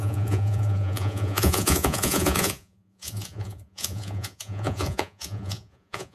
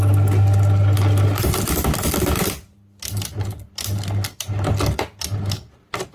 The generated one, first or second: first